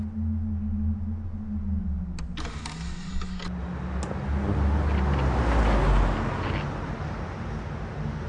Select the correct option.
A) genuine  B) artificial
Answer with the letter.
A